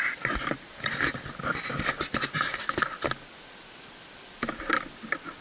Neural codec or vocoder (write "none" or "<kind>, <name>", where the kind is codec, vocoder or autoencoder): none